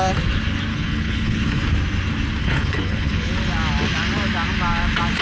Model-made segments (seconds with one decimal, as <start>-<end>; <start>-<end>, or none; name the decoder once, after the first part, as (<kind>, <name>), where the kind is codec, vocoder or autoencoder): 0.7-1.6 (codec, HILCodec); 2.4-3.3